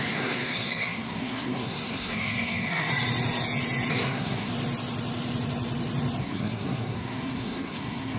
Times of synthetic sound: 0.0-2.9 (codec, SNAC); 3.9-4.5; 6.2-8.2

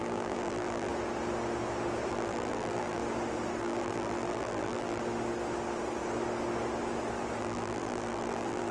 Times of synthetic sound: 0.0-0.9 (vocoder, BigVGAN v2); 2.1-3.0; 3.6-5.0; 7.4-8.7

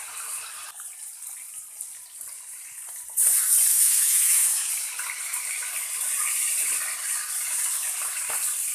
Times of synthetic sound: 3.7-4.7 (autoencoder, DAC-VAE)

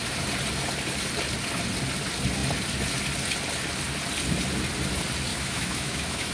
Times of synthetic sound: 5.3-6.3 (autoencoder, DAC-VAE)

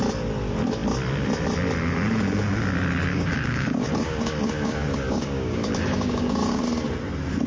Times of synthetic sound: 3.1-6.6 (codec, DAC)

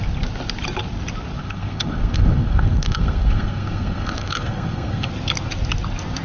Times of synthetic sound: 1.4-5.1 (codec, SNAC)

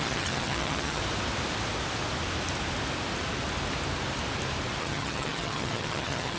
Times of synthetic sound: 0.0-1.0 (vocoder, HiFi-GAN); 4.8-6.4